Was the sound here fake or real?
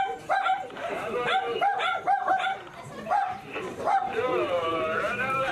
fake